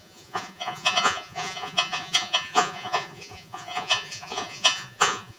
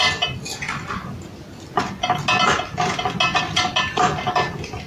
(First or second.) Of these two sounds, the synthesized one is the first